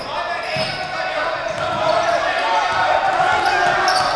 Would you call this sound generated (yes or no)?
no